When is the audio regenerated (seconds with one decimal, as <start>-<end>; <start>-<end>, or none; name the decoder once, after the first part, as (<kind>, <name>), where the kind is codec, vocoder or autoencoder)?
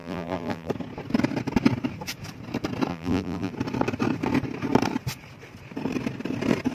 0.0-0.7 (vocoder, BigVGAN v2); 2.9-3.5